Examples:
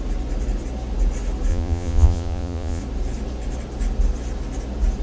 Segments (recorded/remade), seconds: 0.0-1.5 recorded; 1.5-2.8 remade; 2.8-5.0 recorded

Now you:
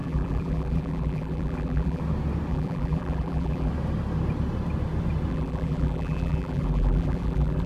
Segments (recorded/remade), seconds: 0.0-2.0 remade; 2.0-2.5 recorded; 2.5-3.7 remade; 3.7-5.3 recorded; 5.3-7.7 remade

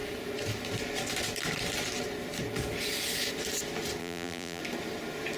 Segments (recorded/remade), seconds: 0.0-4.0 recorded; 4.0-4.6 remade; 4.6-5.4 recorded

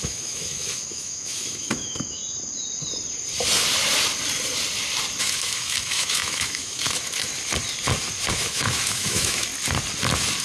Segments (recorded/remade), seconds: 0.0-2.2 remade; 2.2-5.2 recorded; 5.2-7.3 remade; 7.3-8.3 recorded; 8.3-9.5 remade; 9.5-10.4 recorded

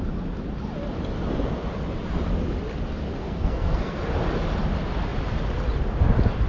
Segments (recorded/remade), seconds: 0.0-3.1 recorded; 3.1-4.0 remade; 4.0-6.5 recorded

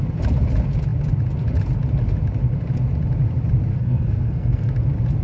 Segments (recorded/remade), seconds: 0.0-3.7 recorded; 3.7-4.7 remade; 4.7-5.2 recorded